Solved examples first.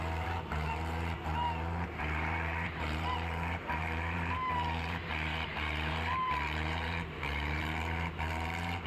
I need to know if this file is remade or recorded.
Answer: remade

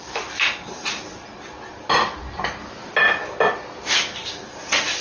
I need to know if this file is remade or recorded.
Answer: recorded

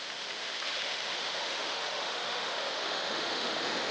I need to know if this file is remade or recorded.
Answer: remade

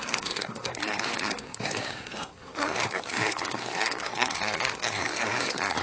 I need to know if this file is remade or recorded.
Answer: remade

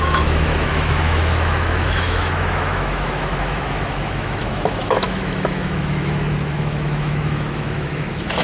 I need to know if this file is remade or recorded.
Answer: remade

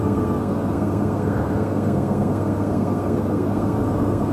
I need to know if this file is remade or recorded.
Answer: remade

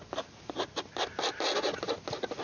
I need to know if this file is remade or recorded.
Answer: recorded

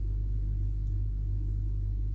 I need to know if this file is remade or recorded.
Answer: recorded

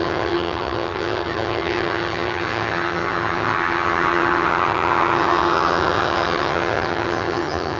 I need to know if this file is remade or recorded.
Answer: remade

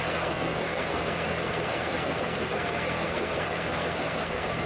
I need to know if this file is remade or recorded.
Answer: remade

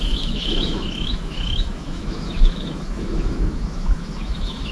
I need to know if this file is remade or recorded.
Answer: remade